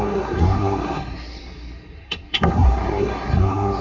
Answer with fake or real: fake